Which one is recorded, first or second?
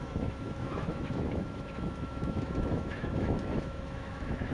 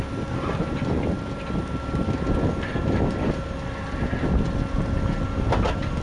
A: second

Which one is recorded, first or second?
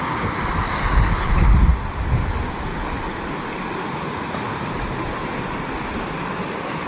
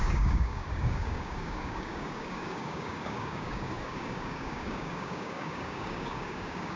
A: first